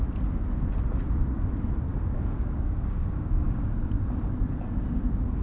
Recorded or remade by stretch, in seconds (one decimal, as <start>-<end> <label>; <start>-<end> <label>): 0.0-1.9 recorded; 1.9-3.9 remade; 3.9-5.4 recorded